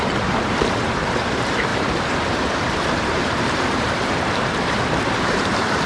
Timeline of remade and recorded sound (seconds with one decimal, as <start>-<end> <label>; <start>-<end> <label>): 0.0-5.9 remade